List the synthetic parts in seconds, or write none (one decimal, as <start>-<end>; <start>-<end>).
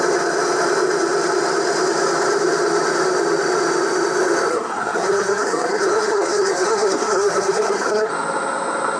4.5-8.1